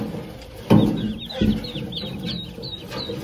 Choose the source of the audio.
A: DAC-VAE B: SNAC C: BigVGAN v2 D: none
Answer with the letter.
D